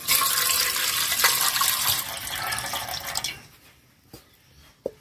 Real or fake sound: real